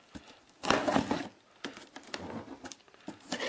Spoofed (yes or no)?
no